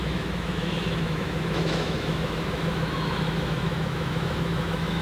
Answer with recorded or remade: remade